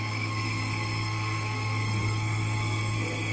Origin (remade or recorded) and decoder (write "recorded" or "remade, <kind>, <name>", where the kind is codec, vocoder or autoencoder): remade, codec, SNAC